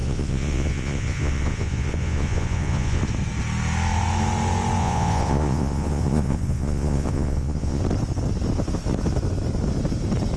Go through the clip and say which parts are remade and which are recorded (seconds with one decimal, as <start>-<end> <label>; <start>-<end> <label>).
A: 0.0-3.0 remade; 3.0-4.8 recorded; 4.8-7.8 remade; 7.8-10.4 recorded